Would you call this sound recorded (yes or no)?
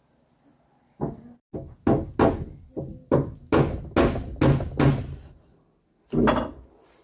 yes